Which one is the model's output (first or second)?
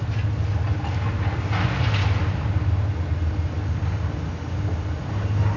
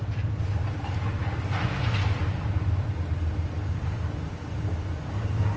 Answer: second